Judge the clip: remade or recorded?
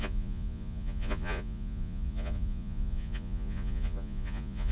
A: remade